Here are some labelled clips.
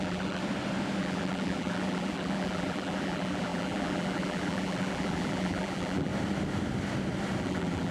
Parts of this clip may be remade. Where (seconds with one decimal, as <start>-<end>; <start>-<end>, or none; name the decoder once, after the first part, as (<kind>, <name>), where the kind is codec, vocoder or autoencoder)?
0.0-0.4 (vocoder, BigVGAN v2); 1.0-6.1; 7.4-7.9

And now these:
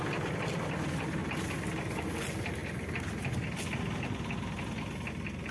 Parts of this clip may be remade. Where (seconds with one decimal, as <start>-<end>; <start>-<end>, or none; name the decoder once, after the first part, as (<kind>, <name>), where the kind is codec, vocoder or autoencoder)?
none

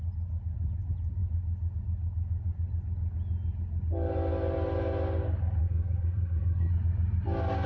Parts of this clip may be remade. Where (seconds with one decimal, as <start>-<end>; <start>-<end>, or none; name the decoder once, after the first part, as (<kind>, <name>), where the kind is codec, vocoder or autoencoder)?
5.6-6.7 (codec, SNAC)

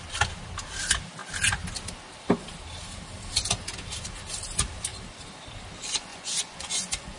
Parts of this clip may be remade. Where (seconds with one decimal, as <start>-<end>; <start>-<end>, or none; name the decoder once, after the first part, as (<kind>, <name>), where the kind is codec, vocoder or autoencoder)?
6.1-7.2 (vocoder, Vocos)

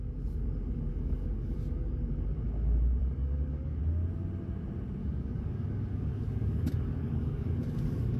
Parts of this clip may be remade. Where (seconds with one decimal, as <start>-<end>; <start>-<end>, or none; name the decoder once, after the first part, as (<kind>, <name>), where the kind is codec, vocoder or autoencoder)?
0.9-2.0 (codec, DAC); 3.0-3.8; 5.0-8.2